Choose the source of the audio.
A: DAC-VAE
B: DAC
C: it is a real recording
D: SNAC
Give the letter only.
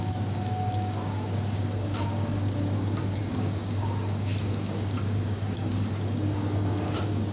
B